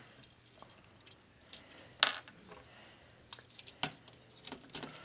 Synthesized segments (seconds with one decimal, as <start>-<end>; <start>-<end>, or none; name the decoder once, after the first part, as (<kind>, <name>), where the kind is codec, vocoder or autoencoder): none